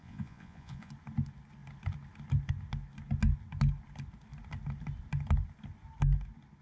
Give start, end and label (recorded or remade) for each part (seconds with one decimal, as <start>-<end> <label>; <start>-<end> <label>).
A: 0.0-0.9 remade; 0.9-6.6 recorded

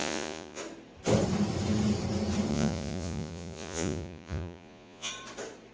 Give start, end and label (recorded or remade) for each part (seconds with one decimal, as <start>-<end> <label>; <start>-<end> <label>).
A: 0.0-0.6 remade; 0.6-2.5 recorded; 2.5-5.1 remade; 5.1-5.7 recorded

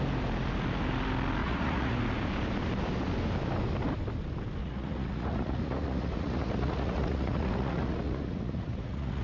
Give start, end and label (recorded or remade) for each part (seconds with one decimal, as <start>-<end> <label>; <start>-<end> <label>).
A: 0.0-1.4 recorded; 1.4-2.0 remade; 2.0-4.6 recorded; 4.6-9.2 remade